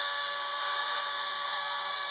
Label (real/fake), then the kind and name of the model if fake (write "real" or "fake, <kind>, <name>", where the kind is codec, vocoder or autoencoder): fake, codec, SNAC